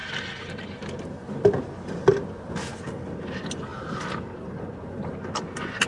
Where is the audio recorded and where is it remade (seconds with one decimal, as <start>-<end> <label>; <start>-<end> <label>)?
0.0-5.9 recorded